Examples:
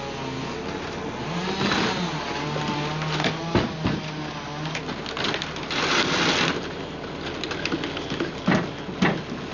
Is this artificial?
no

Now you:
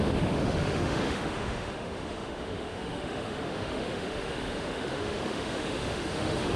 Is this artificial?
yes